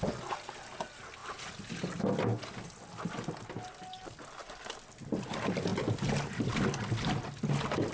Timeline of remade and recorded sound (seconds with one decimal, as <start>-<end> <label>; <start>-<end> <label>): 0.0-1.2 recorded; 1.2-2.0 remade; 2.0-4.4 recorded; 4.4-5.3 remade; 5.3-7.9 recorded